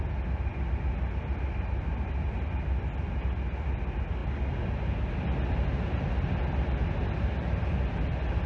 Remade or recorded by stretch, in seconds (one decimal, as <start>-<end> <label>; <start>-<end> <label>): 0.0-8.5 recorded